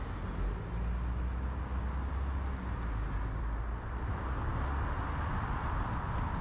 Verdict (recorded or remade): recorded